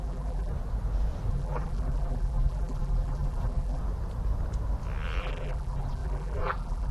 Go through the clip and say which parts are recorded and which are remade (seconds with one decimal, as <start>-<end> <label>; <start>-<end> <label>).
0.0-0.5 remade; 0.5-1.3 recorded; 1.3-3.8 remade; 3.8-5.2 recorded; 5.2-6.9 remade